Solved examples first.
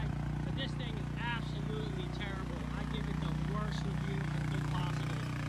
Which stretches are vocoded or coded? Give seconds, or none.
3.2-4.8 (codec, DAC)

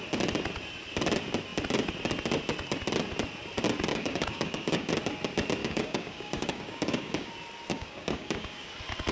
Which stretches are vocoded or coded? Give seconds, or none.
3.9-4.9 (codec, DAC); 5.6-7.3; 7.7-8.7

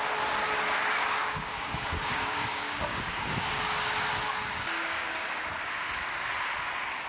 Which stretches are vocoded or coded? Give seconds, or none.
1.2-5.5 (codec, DAC)

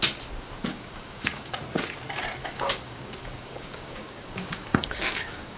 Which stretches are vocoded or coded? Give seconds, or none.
0.7-1.5 (codec, DAC); 2.4-5.6

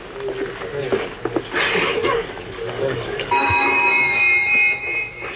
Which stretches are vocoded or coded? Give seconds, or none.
2.0-5.4 (codec, DAC)

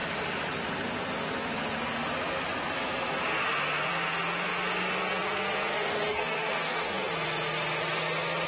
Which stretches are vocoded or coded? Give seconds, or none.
5.9-7.1 (codec, DAC)

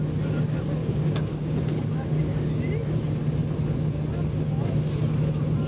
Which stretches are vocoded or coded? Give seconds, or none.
0.8-2.4 (codec, DAC)

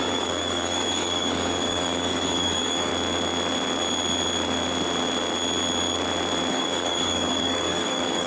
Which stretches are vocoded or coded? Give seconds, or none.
0.0-2.9 (codec, DAC); 6.5-8.3